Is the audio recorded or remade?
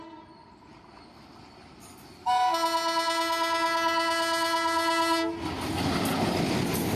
recorded